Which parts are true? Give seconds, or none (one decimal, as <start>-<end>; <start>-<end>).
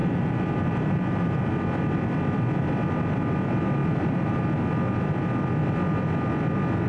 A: 1.5-3.8; 4.4-6.9